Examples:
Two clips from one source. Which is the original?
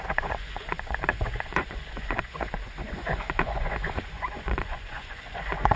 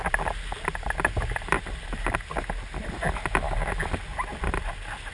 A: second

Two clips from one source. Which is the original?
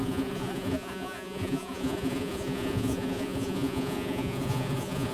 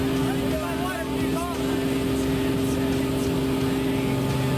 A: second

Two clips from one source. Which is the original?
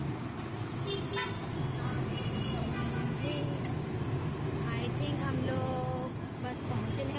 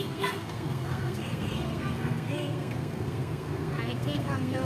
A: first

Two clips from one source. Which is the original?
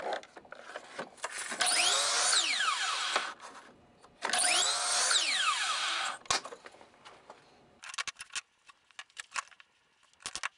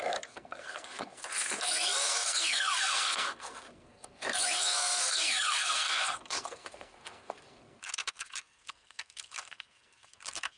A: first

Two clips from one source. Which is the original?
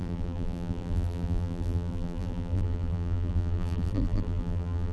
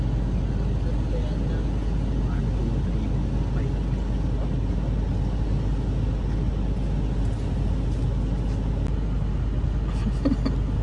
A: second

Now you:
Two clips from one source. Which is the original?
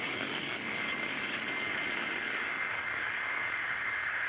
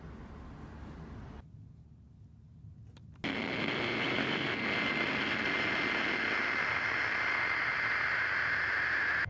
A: second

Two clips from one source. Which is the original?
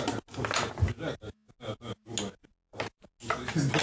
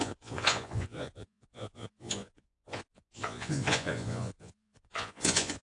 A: first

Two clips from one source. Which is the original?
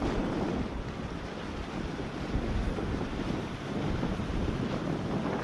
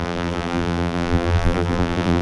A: first